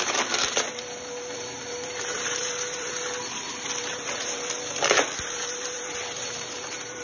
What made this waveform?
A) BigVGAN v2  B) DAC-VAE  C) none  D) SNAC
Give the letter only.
A